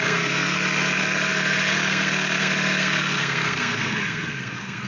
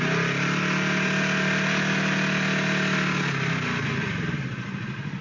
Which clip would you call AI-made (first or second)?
first